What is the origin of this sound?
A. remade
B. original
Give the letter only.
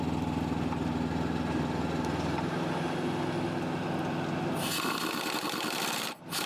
B